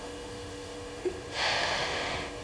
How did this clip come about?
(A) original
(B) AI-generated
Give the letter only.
B